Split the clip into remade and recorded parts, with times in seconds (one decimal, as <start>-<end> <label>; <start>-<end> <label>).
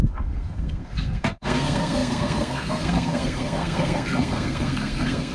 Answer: 0.0-5.3 remade